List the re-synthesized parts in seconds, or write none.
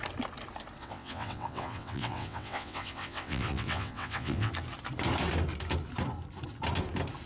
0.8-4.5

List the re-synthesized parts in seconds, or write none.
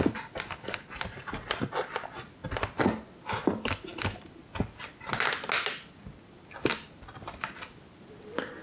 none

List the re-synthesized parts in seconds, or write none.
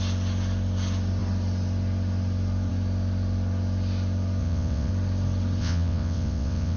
4.4-4.9; 5.6-6.8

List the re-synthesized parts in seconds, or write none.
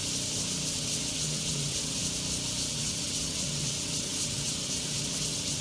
0.7-2.0; 2.7-5.6